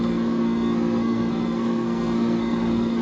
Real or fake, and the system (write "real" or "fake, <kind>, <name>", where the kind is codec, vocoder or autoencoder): fake, codec, SNAC